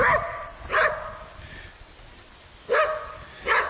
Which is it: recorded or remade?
recorded